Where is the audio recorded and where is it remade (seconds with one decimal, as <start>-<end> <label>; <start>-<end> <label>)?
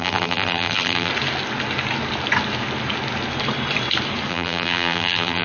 0.0-1.1 remade; 1.1-4.3 recorded; 4.3-5.4 remade